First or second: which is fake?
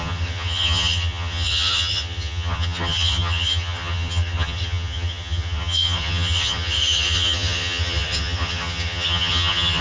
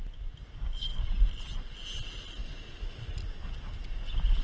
first